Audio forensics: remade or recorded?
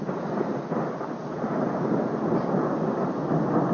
recorded